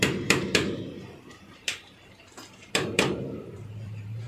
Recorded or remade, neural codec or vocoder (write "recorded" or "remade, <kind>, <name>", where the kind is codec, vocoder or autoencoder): remade, vocoder, BigVGAN v2